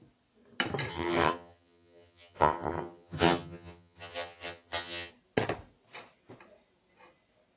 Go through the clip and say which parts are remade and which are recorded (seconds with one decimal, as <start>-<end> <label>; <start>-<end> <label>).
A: 0.0-0.9 recorded; 0.9-5.1 remade; 5.1-7.6 recorded